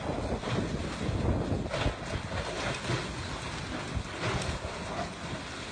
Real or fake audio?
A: real